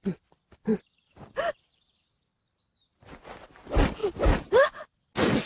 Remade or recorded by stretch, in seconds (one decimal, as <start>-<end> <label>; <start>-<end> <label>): 0.0-5.5 recorded